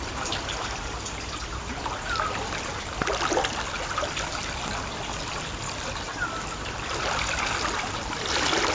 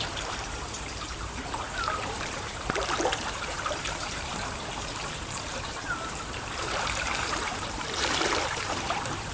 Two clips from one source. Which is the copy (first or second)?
second